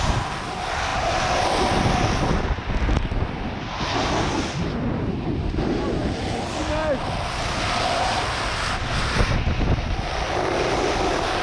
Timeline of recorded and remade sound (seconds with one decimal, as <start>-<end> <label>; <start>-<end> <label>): 0.0-11.4 recorded